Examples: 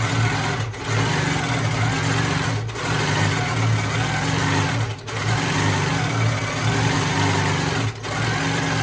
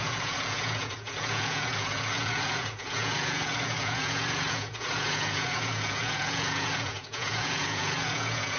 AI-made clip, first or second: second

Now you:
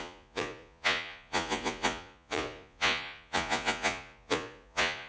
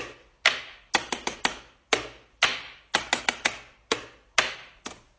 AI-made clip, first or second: first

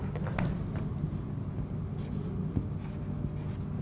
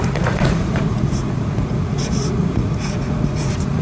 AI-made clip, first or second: second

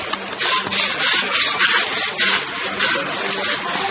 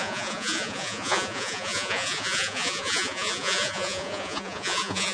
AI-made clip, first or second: second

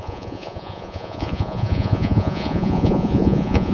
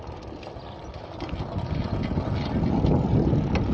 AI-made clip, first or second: first